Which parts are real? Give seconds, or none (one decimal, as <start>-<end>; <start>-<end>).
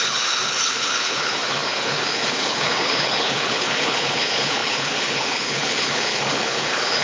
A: none